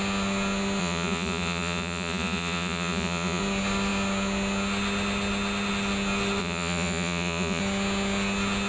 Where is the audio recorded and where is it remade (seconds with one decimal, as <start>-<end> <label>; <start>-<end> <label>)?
0.0-0.8 recorded; 0.8-3.4 remade; 3.4-6.4 recorded; 6.4-7.6 remade; 7.6-8.7 recorded